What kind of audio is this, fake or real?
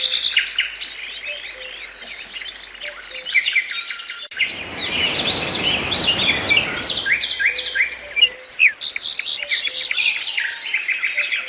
real